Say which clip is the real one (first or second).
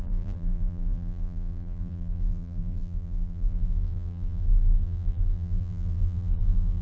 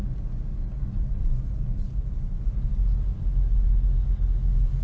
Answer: second